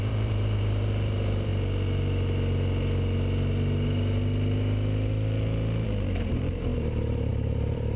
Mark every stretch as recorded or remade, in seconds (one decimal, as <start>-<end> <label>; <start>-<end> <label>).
0.0-1.5 remade; 1.5-6.3 recorded; 6.3-8.0 remade